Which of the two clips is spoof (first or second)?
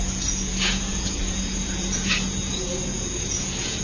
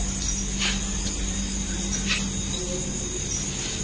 first